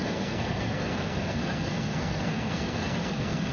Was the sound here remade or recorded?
remade